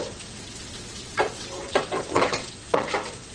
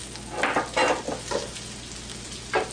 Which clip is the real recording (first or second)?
second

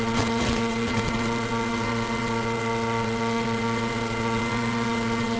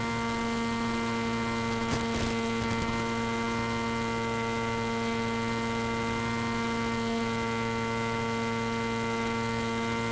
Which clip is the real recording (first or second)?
second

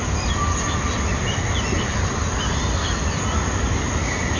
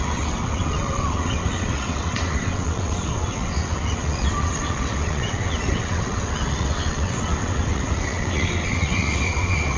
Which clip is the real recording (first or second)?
first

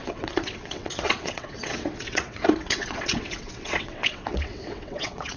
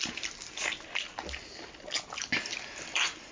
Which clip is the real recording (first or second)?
second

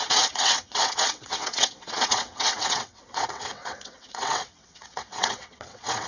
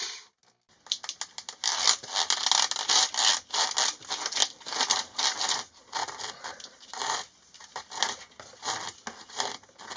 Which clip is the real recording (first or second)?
second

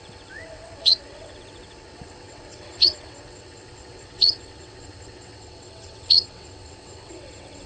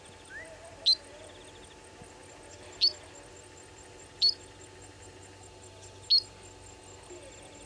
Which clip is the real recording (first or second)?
second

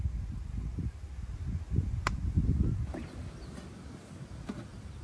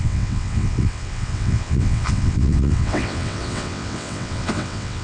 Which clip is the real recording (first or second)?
first